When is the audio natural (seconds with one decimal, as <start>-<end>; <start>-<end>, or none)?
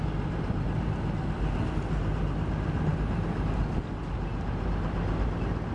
0.0-5.7